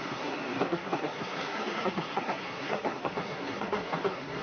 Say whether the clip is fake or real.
fake